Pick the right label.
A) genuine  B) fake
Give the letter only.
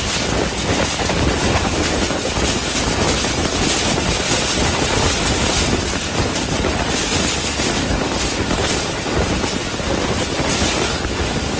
A